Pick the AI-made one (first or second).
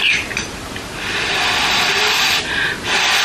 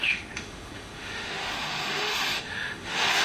second